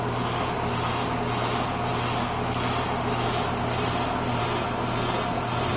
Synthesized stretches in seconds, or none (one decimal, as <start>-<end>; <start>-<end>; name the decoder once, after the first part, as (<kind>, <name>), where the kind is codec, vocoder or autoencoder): none